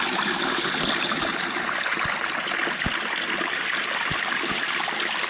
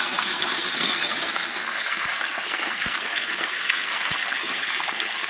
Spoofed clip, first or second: second